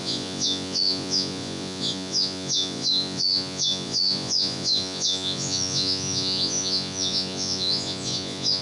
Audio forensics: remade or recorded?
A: remade